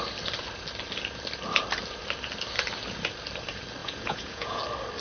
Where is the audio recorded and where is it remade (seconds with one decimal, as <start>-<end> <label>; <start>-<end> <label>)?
0.0-3.8 recorded; 3.8-4.6 remade; 4.6-5.0 recorded